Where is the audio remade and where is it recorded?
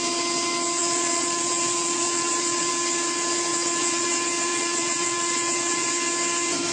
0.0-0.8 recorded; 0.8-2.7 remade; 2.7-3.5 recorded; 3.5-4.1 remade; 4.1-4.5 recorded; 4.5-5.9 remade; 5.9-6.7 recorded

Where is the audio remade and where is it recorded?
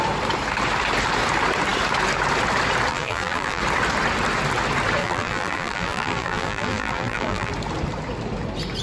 0.0-2.9 recorded; 2.9-3.6 remade; 3.6-5.0 recorded; 5.0-7.5 remade; 7.5-8.8 recorded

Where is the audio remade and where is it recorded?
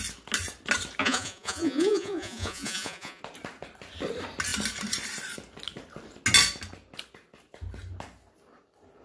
0.0-1.0 recorded; 1.0-3.2 remade; 3.2-9.0 recorded